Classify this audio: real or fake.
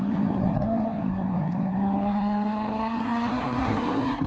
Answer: fake